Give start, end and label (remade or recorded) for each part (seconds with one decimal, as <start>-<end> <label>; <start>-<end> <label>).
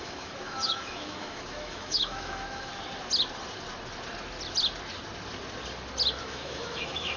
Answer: 0.0-2.7 remade; 2.7-6.2 recorded; 6.2-7.2 remade